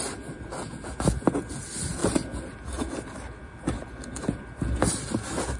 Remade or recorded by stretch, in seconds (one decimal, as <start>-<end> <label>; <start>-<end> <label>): 0.0-5.6 recorded